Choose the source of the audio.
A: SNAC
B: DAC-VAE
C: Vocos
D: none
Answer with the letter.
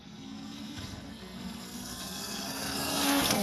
A